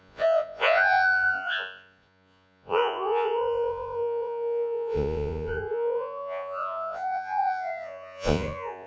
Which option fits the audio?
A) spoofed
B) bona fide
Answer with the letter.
A